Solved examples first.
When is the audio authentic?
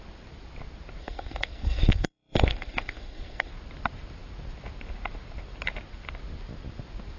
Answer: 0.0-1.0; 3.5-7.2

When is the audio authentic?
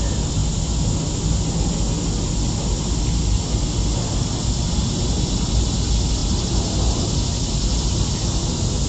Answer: 0.0-8.9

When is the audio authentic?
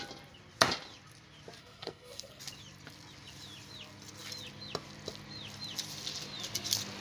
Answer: 0.0-1.6; 2.4-7.0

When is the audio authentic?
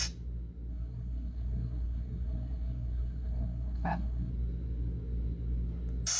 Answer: 0.0-0.7; 4.3-6.2